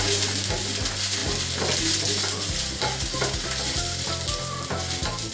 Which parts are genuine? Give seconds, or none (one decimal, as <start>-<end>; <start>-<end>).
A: 0.0-5.3